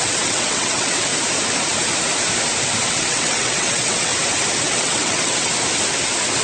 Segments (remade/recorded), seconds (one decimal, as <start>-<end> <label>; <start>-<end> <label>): 0.0-1.1 remade; 1.1-2.9 recorded; 2.9-4.1 remade; 4.1-4.6 recorded; 4.6-5.5 remade; 5.5-6.4 recorded